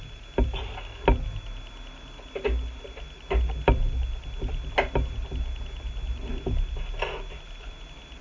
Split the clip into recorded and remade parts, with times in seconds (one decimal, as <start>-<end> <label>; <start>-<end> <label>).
0.0-8.2 recorded